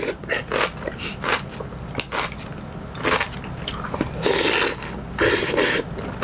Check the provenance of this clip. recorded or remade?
recorded